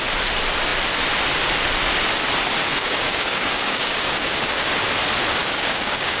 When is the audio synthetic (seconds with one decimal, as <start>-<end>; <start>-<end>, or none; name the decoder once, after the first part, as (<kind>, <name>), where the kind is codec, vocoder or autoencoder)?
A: 2.8-4.7 (codec, DAC); 5.4-6.2